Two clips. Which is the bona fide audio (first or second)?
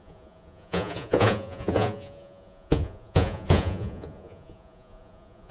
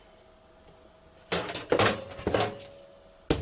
second